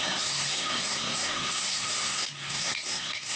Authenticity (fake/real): fake